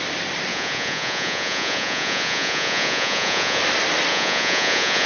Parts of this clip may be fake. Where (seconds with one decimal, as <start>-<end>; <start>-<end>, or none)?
0.5-3.6; 4.1-5.1